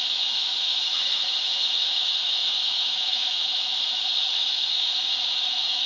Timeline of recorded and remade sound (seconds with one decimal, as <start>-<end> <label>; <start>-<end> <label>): 0.0-5.9 remade